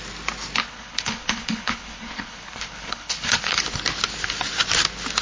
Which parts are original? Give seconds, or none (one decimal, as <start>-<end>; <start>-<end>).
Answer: 0.0-0.6; 3.6-5.2